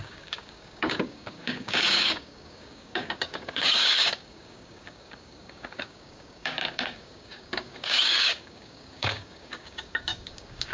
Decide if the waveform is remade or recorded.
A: remade